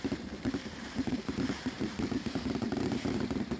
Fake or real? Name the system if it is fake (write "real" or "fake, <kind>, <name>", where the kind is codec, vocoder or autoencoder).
fake, vocoder, BigVGAN v2